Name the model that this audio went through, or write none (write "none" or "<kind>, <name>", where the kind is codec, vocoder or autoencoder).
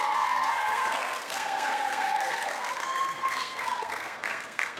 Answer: codec, SNAC